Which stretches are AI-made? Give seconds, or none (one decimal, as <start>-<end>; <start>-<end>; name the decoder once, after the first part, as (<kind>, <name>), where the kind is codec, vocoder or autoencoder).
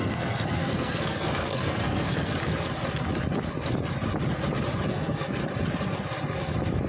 0.0-2.3 (codec, SNAC); 4.9-5.4